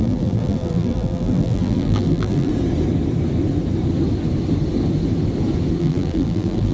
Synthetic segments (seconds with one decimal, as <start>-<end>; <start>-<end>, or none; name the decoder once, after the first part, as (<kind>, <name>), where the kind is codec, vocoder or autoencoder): 0.0-2.5 (vocoder, BigVGAN v2); 5.8-6.7